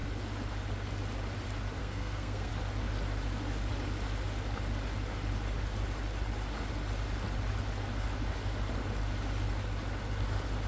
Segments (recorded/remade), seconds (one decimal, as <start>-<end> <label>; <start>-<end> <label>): 0.0-1.8 recorded; 1.8-2.5 remade; 2.5-10.7 recorded